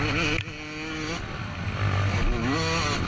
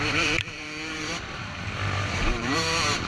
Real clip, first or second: first